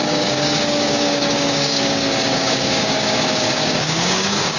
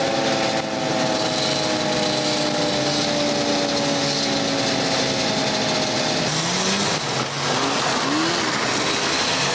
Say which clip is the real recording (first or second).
second